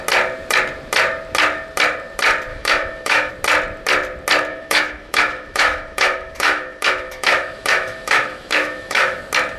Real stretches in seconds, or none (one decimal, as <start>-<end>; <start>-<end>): 0.0-2.5; 3.3-4.5; 9.2-9.6